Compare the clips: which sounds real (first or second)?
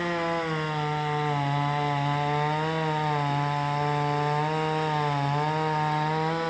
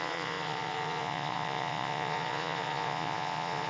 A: first